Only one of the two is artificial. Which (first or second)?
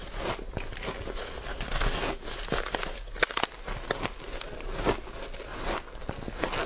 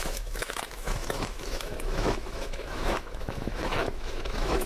second